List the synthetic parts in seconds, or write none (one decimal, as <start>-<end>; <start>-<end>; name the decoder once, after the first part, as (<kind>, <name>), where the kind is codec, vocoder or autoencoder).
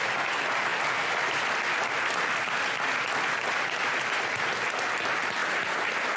5.4-6.2 (vocoder, BigVGAN v2)